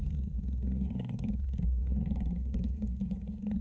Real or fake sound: fake